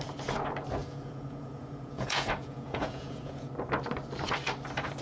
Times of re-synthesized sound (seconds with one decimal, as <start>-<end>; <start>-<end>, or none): 0.8-3.5